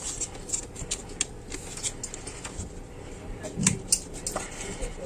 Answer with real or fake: real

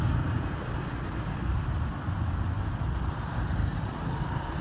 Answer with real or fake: real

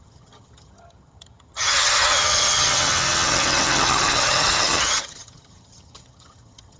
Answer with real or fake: fake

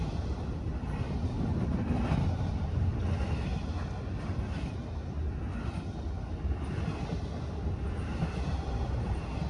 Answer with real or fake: real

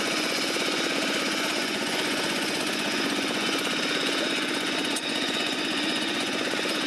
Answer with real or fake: fake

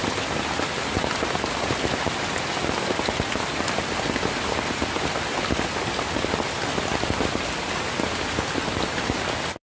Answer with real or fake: real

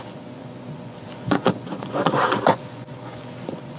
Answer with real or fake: fake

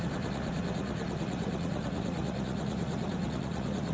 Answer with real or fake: fake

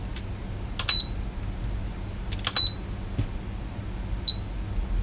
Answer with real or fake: real